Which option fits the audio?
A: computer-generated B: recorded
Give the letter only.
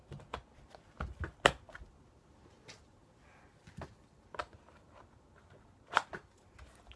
B